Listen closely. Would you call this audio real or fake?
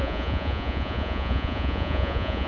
fake